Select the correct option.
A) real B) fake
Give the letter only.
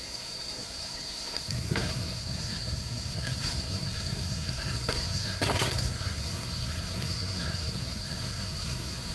B